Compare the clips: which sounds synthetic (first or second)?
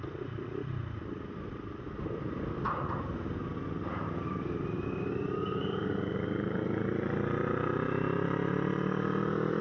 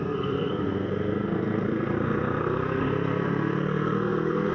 second